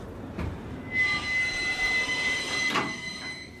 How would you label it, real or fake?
fake